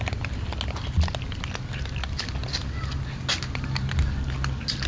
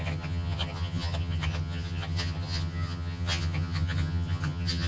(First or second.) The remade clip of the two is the second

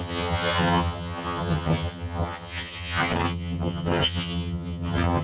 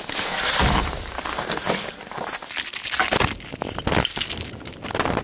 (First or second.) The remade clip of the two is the first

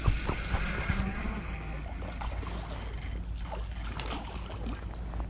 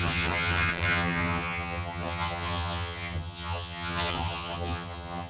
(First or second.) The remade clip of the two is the second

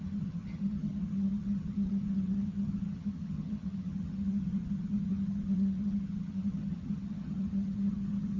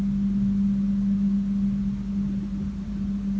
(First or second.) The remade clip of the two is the first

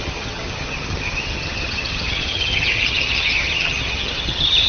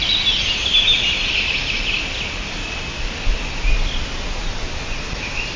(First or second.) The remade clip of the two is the first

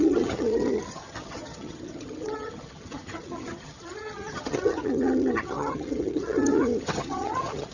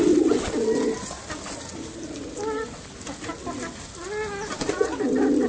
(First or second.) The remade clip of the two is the first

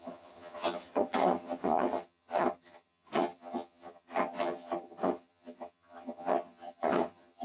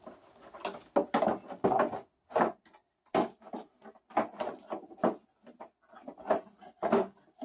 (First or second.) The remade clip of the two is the first